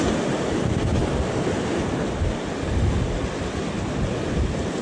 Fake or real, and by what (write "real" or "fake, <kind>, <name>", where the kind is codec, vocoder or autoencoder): real